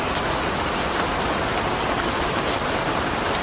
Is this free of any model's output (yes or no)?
yes